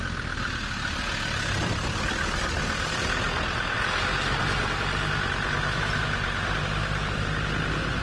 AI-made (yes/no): no